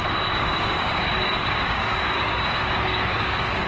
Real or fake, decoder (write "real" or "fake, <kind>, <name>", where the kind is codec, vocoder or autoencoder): fake, codec, DAC